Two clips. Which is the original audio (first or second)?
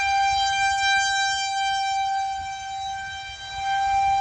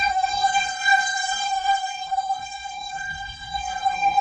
first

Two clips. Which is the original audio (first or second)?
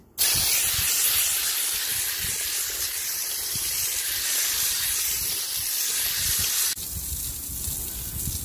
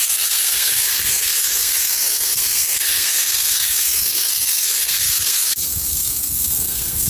first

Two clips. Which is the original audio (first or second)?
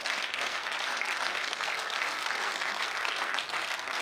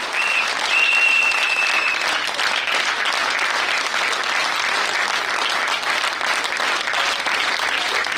second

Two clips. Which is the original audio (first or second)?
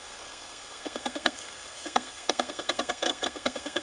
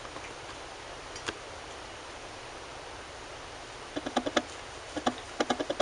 second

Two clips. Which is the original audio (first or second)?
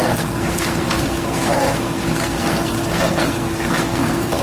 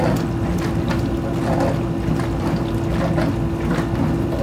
second